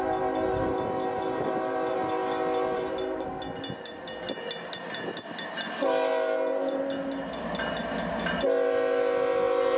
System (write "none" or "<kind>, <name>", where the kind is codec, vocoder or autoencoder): none